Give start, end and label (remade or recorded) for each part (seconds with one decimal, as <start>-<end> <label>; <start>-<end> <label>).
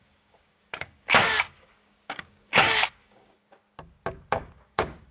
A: 0.0-3.6 remade; 3.6-4.3 recorded; 4.3-5.1 remade